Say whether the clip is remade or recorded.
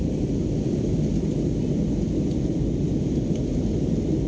recorded